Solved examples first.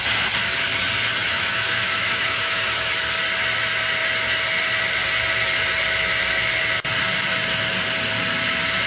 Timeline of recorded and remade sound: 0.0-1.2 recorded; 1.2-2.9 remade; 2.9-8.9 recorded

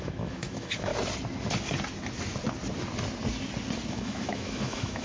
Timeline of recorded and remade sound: 0.0-0.9 remade; 0.9-3.9 recorded; 3.9-5.0 remade

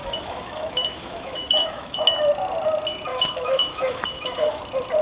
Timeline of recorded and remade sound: 0.0-2.0 remade; 2.0-3.1 recorded; 3.1-4.6 remade; 4.6-5.0 recorded

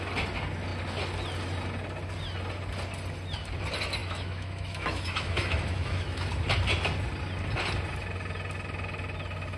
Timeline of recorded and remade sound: 0.0-4.0 recorded; 4.0-6.3 remade; 6.3-9.6 recorded

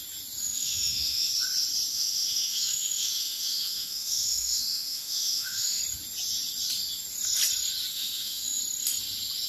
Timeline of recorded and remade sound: 0.0-0.4 recorded; 0.4-1.3 remade; 1.3-1.9 recorded; 1.9-5.8 remade; 5.8-7.9 recorded; 7.9-8.6 remade; 8.6-9.5 recorded

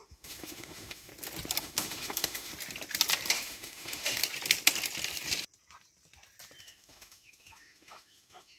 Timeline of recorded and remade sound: 0.0-1.1 remade; 1.1-1.6 recorded; 1.6-2.5 remade; 2.5-3.3 recorded; 3.3-4.2 remade; 4.2-6.6 recorded; 6.6-8.6 remade

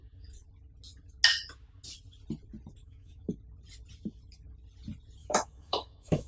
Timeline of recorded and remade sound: 0.0-2.8 recorded; 2.8-3.3 remade; 3.3-5.2 recorded; 5.2-6.3 remade